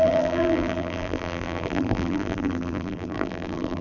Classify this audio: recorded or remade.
remade